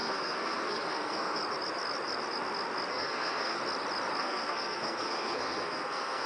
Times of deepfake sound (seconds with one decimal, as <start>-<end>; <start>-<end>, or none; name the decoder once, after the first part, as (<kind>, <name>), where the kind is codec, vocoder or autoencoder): 0.0-1.4 (codec, SNAC); 2.9-3.6; 4.2-6.3